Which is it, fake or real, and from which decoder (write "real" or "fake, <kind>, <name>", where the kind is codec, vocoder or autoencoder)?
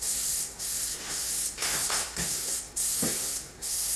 fake, codec, SNAC